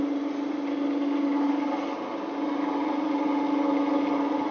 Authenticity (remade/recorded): recorded